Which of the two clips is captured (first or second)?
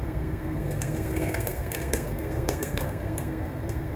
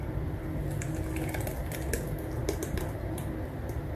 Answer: second